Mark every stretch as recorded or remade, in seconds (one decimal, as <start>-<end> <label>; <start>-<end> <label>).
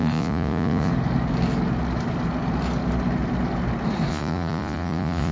0.0-0.9 remade; 0.9-4.1 recorded; 4.1-5.3 remade